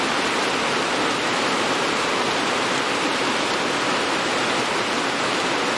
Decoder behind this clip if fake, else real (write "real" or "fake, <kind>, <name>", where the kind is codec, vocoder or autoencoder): real